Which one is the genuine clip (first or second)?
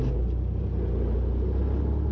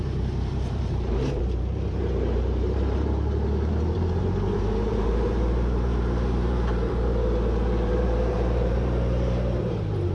first